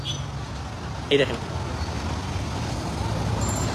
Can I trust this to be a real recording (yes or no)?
yes